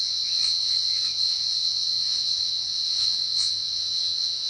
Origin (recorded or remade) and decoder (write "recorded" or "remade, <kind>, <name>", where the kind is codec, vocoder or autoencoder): remade, vocoder, WaveNeXt